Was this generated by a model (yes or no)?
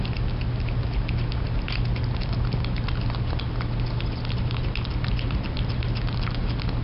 no